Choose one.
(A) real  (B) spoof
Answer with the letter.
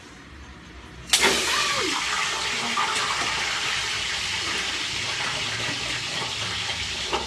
A